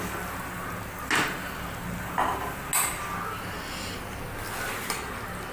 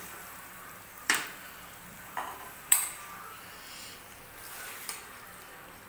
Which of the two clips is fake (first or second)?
second